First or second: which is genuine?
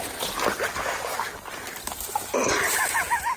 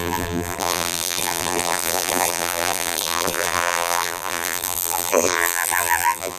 first